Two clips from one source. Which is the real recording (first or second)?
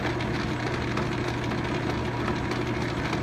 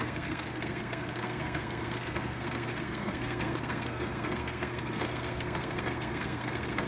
first